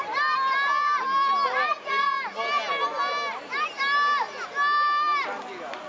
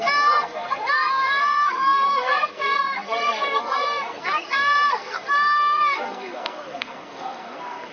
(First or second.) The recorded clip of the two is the first